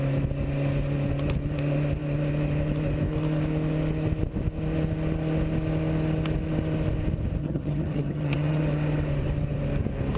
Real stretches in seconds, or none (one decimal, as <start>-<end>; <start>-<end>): 0.0-7.4; 8.6-10.2